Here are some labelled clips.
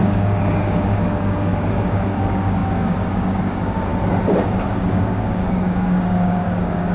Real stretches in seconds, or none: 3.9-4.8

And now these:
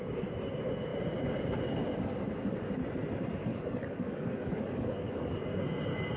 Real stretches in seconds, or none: 0.0-3.5; 5.4-6.2

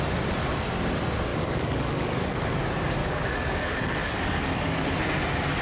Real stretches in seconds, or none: 0.0-1.3; 2.6-3.0; 5.0-5.6

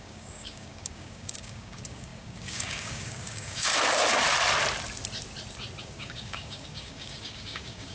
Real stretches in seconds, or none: 3.7-5.8